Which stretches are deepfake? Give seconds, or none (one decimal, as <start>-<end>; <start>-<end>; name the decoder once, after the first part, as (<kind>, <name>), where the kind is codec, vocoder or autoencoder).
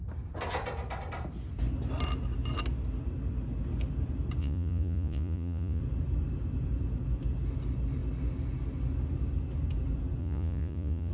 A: 4.4-5.8 (vocoder, Vocos); 10.2-11.1